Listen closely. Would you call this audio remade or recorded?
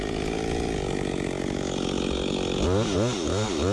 recorded